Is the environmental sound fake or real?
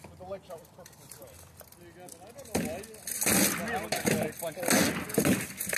real